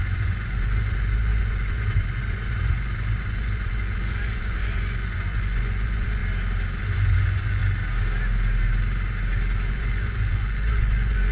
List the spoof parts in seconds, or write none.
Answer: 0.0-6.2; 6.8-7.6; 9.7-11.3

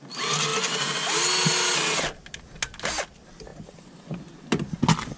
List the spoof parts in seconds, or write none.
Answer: none

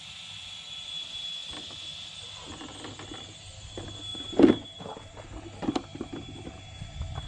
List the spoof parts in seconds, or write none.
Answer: 4.1-5.2; 5.9-6.6

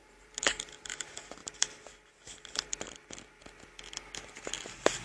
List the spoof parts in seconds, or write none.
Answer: 0.0-0.6